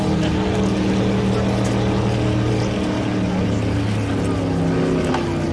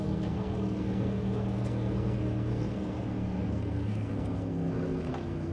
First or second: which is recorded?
first